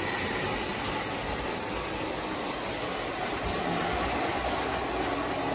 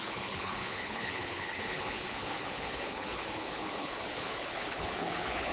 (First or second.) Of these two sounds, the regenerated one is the second